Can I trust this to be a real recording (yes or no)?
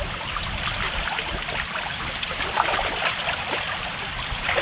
yes